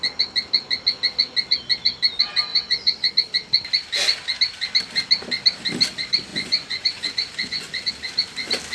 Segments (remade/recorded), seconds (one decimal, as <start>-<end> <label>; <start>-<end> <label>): 0.0-2.5 recorded; 2.5-3.1 remade; 3.1-6.3 recorded; 6.3-7.9 remade; 7.9-8.7 recorded